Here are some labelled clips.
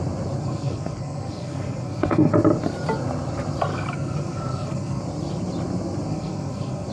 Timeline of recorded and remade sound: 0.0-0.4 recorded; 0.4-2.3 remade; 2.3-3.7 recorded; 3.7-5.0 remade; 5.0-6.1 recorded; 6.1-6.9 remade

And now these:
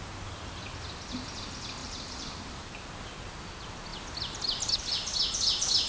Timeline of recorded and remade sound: 0.0-1.8 recorded; 1.8-2.9 remade; 2.9-5.9 recorded